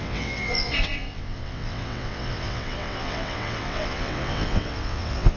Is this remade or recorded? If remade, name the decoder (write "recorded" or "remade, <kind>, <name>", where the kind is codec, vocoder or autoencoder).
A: remade, vocoder, WaveNeXt